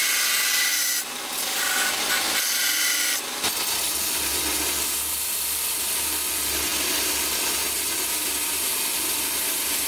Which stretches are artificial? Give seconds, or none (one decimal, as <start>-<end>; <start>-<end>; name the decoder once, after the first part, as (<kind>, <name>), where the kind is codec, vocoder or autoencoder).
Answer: none